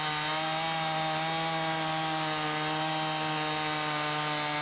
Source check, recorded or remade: recorded